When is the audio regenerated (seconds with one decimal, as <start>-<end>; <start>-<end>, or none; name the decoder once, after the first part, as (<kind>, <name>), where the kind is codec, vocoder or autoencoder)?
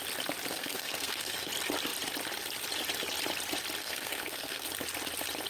0.5-1.5 (codec, SNAC); 3.8-4.7